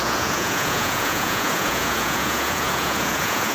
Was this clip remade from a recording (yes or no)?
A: yes